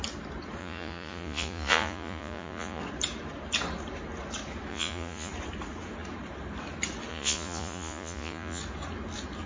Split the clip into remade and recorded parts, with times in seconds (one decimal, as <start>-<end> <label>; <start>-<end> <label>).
0.0-0.6 recorded; 0.6-2.8 remade; 2.8-4.7 recorded; 4.7-5.3 remade; 5.3-7.1 recorded; 7.1-8.6 remade; 8.6-9.5 recorded